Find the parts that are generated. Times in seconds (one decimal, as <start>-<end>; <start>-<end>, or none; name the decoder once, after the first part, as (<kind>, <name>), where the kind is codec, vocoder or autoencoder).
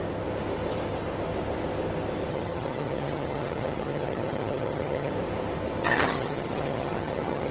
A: 2.3-5.1 (vocoder, HiFi-GAN); 5.8-7.5